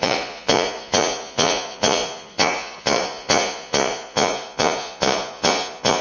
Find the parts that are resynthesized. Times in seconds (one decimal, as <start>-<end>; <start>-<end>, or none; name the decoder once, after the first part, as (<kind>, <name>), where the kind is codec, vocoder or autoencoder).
0.0-6.0 (vocoder, Vocos)

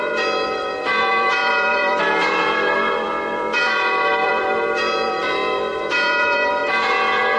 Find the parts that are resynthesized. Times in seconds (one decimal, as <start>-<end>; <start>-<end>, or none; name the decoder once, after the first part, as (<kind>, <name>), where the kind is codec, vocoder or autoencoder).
0.0-7.4 (vocoder, BigVGAN v2)

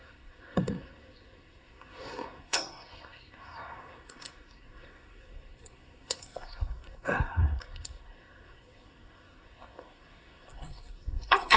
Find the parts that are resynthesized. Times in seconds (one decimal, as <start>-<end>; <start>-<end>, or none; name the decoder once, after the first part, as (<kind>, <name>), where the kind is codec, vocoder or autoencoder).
0.0-11.6 (codec, SNAC)